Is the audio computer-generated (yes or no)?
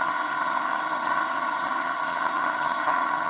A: yes